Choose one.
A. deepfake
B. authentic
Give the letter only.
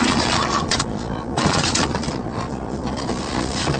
A